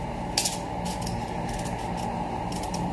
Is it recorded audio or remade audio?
recorded